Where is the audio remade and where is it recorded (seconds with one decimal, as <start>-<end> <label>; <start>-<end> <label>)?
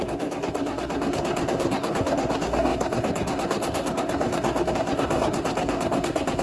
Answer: 0.0-6.4 remade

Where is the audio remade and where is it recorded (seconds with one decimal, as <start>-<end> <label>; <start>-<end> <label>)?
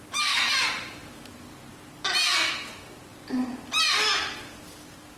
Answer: 0.0-5.2 recorded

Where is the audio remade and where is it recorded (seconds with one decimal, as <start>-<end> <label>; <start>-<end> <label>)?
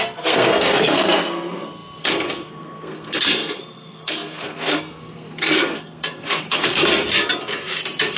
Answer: 0.0-6.8 remade; 6.8-7.7 recorded; 7.7-8.2 remade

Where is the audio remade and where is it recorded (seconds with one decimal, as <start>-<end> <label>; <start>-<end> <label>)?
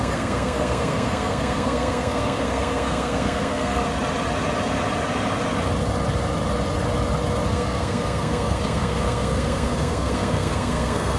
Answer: 0.0-3.8 remade; 3.8-7.5 recorded; 7.5-11.2 remade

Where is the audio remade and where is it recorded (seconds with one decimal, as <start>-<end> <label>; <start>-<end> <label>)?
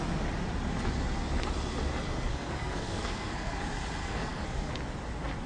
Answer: 0.0-2.3 recorded; 2.3-3.6 remade; 3.6-4.0 recorded; 4.0-4.7 remade; 4.7-5.5 recorded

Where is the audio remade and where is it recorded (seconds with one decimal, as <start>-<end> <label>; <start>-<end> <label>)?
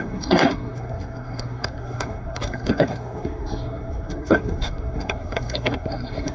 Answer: 0.0-6.3 remade